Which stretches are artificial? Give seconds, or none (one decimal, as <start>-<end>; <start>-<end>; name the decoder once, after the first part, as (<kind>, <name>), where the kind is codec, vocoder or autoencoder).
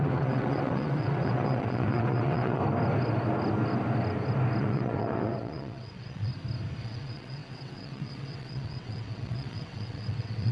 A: 0.0-2.6 (vocoder, WaveNeXt); 4.6-6.3; 6.8-10.5